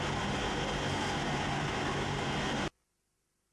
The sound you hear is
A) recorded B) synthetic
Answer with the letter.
A